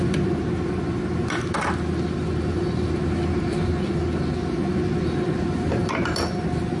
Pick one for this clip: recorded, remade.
recorded